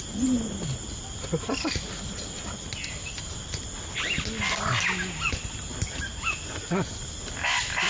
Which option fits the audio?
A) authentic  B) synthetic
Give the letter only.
A